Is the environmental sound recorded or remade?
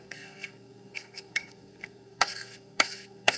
remade